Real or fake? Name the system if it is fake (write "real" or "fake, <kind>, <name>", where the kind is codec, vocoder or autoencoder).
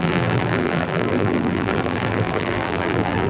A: fake, vocoder, BigVGAN v2